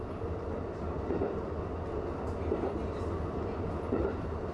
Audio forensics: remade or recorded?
recorded